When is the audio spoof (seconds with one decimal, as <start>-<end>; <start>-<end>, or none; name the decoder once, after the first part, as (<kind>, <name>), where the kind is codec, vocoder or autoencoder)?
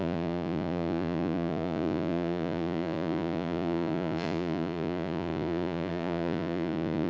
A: 0.0-7.1 (vocoder, Vocos)